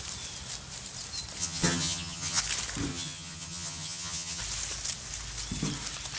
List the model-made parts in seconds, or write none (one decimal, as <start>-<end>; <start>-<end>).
1.4-2.4; 2.9-4.4